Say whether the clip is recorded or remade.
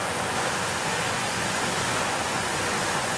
remade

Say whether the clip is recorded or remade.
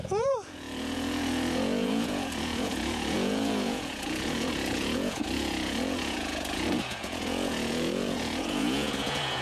remade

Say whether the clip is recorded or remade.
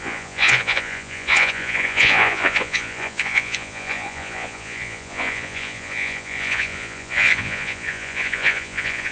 remade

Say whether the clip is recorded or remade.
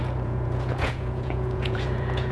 remade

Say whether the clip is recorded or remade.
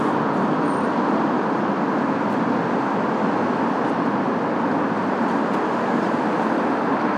recorded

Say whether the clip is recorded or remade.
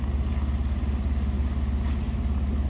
recorded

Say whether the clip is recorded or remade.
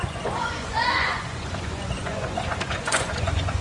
remade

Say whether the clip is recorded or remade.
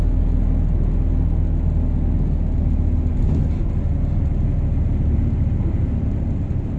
recorded